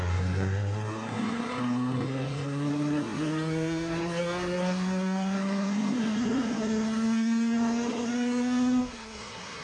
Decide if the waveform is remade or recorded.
remade